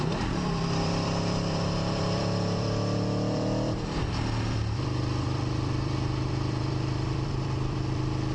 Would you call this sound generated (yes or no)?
yes